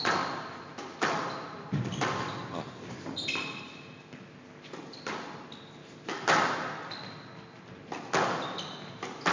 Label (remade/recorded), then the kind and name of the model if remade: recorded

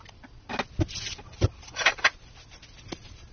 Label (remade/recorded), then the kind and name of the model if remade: recorded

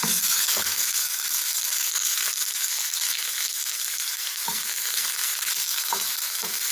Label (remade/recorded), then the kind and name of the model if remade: remade, codec, SNAC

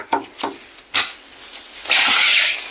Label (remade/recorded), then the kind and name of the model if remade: recorded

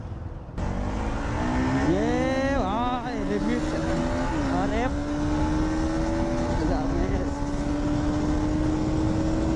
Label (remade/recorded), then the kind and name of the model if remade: recorded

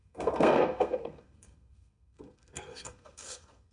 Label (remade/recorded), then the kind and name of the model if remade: remade, codec, SNAC